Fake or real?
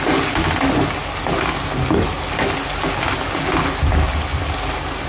real